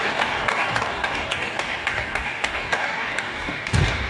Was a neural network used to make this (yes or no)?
yes